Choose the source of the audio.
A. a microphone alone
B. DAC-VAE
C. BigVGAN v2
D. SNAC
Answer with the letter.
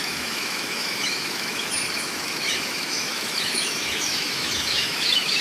B